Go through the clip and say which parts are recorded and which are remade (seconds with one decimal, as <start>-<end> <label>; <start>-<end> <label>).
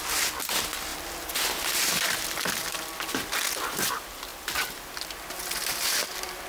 0.0-6.5 recorded